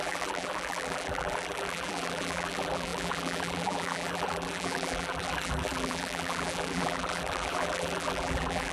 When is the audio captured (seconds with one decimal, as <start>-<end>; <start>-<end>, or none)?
none